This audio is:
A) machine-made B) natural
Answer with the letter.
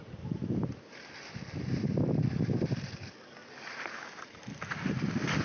B